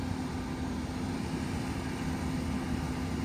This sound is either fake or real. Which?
real